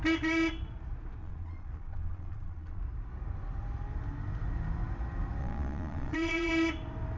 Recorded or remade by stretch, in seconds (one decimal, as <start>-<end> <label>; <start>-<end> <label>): 0.0-1.2 recorded; 1.2-2.8 remade; 2.8-5.4 recorded; 5.4-6.5 remade; 6.5-7.2 recorded